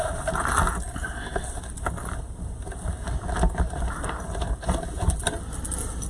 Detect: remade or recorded recorded